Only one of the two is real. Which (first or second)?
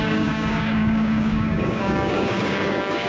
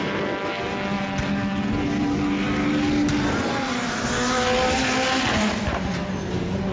second